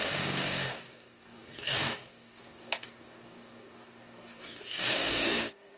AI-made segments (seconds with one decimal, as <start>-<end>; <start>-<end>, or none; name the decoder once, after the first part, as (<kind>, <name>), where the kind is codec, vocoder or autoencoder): 0.0-5.8 (codec, DAC)